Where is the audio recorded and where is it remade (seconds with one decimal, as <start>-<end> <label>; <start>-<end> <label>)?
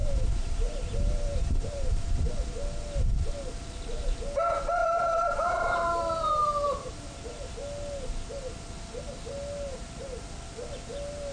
0.0-2.3 remade; 2.3-4.8 recorded; 4.8-6.9 remade; 6.9-9.7 recorded; 9.7-10.3 remade; 10.3-11.3 recorded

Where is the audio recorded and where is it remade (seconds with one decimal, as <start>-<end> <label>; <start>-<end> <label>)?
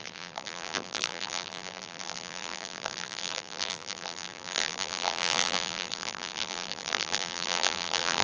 0.0-8.2 remade